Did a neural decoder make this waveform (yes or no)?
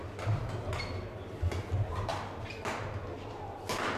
no